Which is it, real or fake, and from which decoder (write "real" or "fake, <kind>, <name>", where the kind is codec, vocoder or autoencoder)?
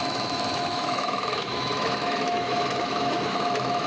fake, autoencoder, DAC-VAE